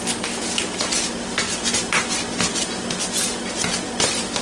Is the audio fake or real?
real